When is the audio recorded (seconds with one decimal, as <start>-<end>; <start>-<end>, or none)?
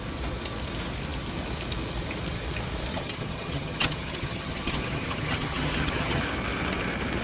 0.0-2.9; 6.2-7.2